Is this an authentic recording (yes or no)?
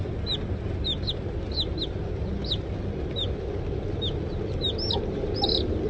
yes